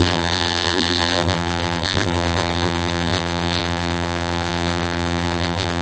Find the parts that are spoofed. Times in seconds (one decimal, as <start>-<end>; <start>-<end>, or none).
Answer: 0.0-5.8